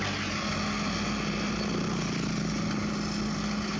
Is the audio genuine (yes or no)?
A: yes